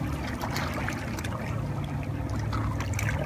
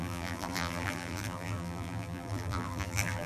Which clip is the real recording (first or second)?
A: first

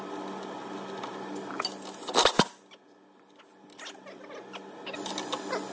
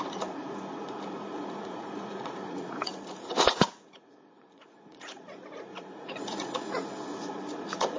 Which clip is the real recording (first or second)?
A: first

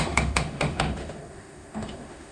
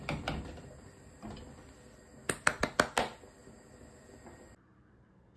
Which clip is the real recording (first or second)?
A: second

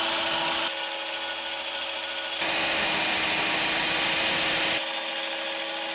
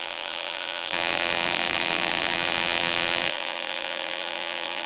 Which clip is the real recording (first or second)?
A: first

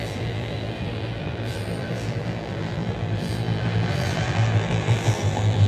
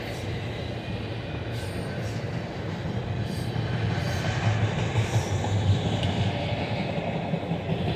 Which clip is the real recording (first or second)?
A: second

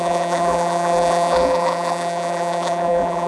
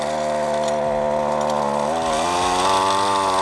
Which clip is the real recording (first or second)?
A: second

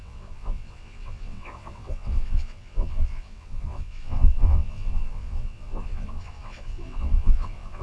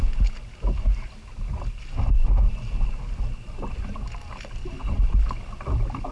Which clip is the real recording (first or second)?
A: second